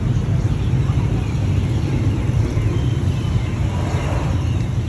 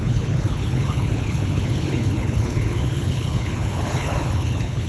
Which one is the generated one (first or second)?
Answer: second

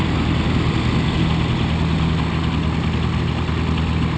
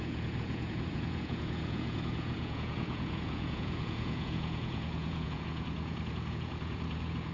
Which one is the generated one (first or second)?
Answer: second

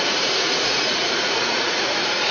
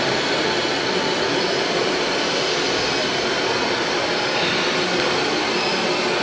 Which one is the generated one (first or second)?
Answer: first